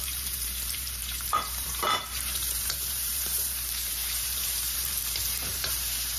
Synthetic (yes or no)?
yes